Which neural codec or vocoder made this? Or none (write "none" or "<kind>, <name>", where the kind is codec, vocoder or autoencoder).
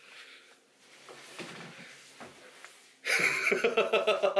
none